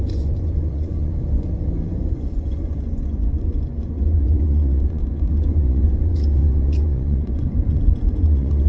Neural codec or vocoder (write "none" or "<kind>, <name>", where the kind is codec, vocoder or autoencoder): vocoder, Vocos